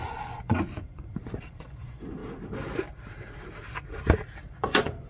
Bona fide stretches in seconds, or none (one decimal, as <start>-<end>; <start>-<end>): 2.2-4.5